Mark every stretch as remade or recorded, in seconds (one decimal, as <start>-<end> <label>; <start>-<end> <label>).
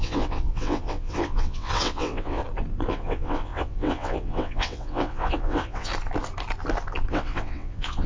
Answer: 0.0-2.4 remade; 2.4-2.9 recorded; 2.9-5.9 remade; 5.9-7.1 recorded; 7.1-8.1 remade